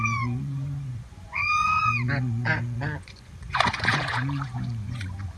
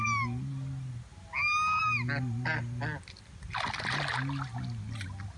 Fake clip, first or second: first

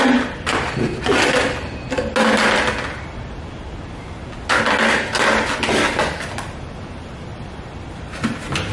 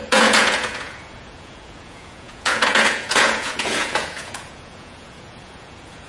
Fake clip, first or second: second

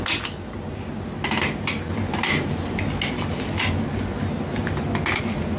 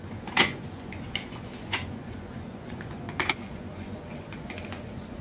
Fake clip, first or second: second